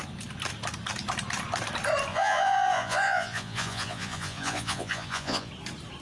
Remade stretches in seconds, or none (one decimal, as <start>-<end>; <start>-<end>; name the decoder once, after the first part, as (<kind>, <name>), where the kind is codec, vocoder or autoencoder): 2.1-5.5 (vocoder, Vocos)